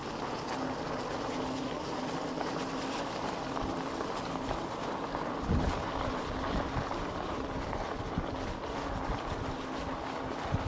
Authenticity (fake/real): real